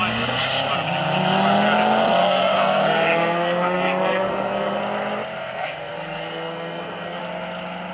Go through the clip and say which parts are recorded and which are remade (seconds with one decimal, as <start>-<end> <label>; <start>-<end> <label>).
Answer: 0.0-2.2 recorded; 2.2-4.8 remade; 4.8-5.4 recorded; 5.4-7.2 remade; 7.2-7.9 recorded